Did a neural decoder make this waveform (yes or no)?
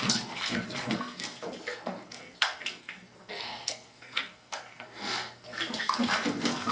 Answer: yes